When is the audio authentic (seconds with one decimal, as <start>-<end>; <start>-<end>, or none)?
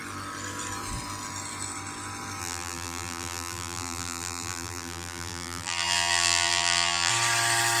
0.0-2.4; 7.1-7.8